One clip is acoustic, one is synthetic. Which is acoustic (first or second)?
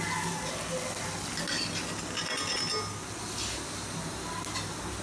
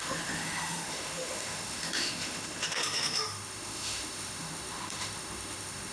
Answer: first